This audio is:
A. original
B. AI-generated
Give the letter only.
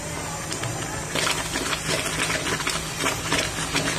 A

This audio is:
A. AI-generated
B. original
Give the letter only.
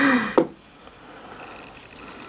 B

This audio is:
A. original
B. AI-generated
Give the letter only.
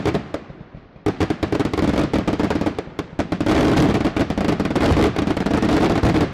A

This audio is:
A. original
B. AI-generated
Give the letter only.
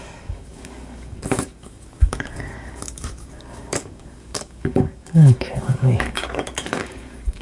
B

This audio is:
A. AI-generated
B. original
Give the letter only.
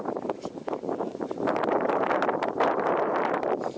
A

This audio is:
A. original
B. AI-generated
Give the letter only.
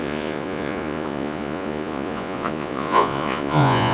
B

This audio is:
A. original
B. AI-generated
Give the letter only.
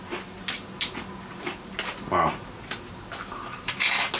A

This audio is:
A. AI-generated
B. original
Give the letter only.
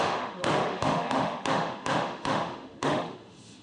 A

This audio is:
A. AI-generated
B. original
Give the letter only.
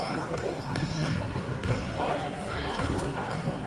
A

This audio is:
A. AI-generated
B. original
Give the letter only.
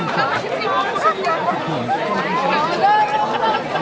B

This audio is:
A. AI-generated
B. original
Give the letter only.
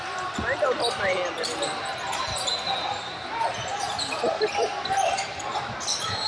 B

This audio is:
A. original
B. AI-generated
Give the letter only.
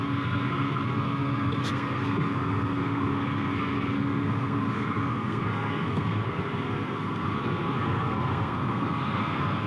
B